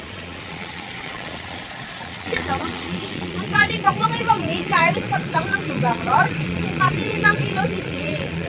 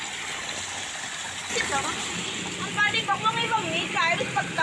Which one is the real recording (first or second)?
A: second